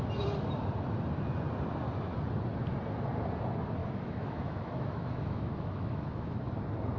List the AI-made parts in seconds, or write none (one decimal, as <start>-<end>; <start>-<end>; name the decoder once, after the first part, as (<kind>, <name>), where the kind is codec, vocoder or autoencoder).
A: 3.8-6.5 (autoencoder, DAC-VAE)